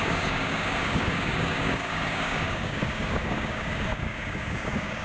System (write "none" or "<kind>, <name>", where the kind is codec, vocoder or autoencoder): codec, DAC